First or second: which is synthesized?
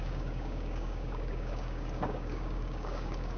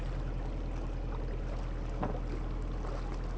first